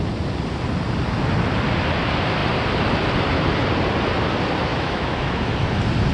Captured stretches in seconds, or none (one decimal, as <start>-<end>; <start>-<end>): 0.0-4.7; 5.5-6.1